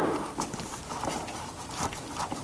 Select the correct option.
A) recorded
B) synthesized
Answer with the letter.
A